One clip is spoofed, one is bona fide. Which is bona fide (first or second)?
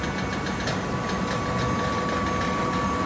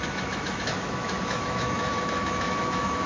first